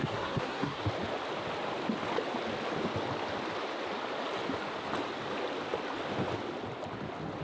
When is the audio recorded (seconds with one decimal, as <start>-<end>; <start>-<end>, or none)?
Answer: 0.8-7.4